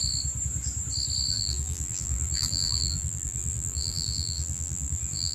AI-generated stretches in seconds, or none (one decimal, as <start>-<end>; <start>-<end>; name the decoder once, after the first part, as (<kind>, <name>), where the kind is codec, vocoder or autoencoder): 1.3-5.3 (vocoder, BigVGAN v2)